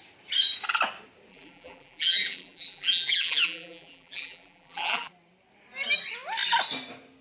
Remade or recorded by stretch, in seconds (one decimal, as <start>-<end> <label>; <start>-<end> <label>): 0.0-1.3 recorded; 1.3-5.1 remade; 5.1-7.2 recorded